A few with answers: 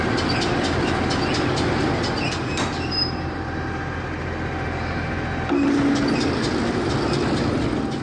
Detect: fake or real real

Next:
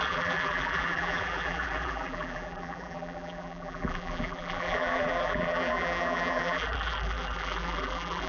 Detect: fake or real fake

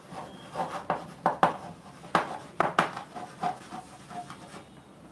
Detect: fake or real real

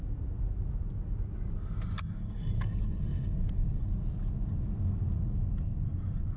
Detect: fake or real real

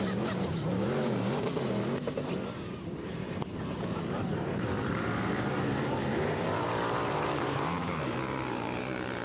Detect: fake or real fake